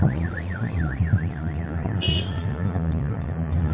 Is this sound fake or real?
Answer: fake